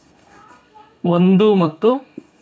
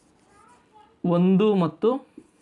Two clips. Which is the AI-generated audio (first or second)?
first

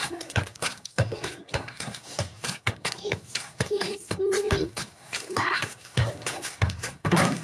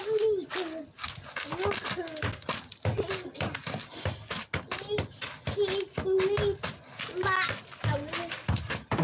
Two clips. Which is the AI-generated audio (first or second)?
first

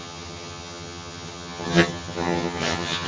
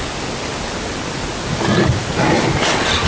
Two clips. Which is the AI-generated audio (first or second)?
first